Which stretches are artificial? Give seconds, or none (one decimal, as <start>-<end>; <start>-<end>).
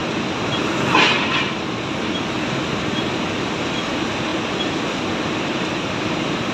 3.9-4.3; 5.4-6.5